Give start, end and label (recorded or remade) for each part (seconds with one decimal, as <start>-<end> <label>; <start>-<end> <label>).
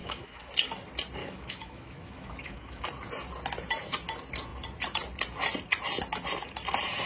0.0-0.5 remade; 0.5-1.2 recorded; 1.2-2.8 remade; 2.8-7.1 recorded